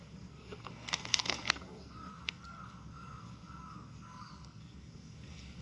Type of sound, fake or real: fake